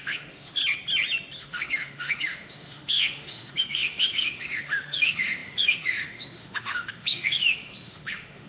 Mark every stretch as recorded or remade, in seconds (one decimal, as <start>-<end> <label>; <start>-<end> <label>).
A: 0.0-0.6 remade; 0.6-1.4 recorded; 1.4-8.5 remade